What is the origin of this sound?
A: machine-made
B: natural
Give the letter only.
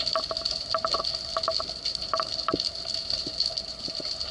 B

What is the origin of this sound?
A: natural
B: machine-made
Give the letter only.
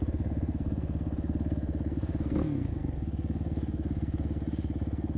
B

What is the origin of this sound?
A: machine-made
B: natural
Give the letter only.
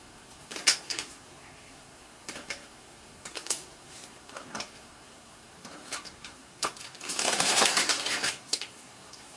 A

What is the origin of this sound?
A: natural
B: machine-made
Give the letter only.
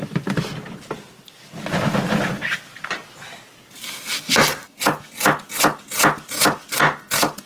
A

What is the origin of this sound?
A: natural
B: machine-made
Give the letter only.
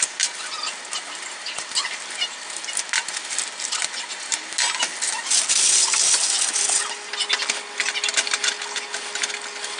A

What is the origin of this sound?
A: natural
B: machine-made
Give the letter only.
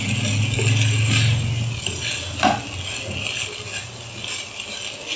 A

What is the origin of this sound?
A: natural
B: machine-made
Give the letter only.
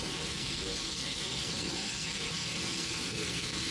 B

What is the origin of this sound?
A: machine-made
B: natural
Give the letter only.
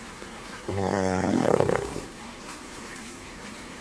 A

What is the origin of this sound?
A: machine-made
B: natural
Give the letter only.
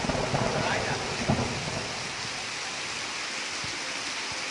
B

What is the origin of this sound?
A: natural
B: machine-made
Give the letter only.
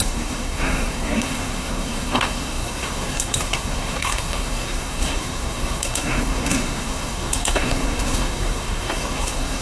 B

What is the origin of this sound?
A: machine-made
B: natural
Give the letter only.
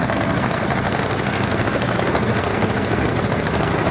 A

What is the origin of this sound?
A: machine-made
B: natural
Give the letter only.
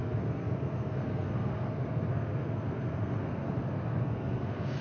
A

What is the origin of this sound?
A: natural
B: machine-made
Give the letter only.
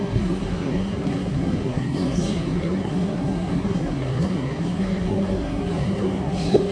B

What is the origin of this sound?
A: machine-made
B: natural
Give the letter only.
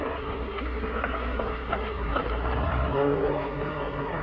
A